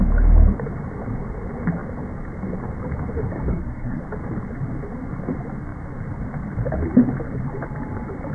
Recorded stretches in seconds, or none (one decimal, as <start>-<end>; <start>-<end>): 0.0-3.5; 4.0-8.3

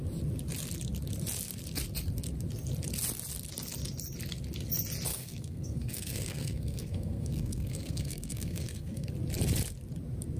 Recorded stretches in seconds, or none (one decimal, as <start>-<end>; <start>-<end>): 0.0-5.1; 9.1-10.4